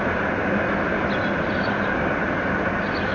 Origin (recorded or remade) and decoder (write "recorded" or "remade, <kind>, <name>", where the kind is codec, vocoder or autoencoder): recorded